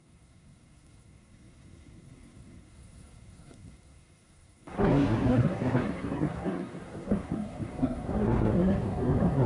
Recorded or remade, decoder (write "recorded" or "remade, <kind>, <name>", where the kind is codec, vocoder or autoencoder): remade, codec, SNAC